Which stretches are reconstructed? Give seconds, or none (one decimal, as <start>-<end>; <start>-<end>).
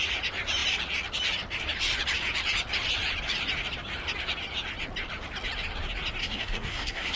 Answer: 6.2-7.2